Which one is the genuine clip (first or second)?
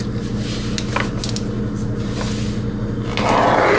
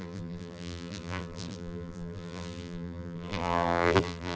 first